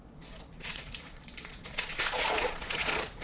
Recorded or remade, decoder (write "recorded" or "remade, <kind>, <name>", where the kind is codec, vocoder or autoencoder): remade, vocoder, Vocos